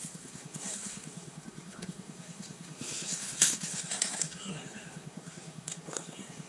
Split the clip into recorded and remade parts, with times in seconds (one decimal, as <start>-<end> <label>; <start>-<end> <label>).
0.0-6.5 remade